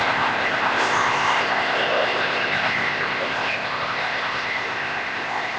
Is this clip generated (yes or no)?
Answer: yes